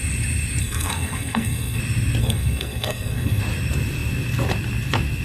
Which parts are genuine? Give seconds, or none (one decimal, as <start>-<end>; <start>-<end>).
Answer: 0.0-0.6; 1.8-2.2; 3.4-5.2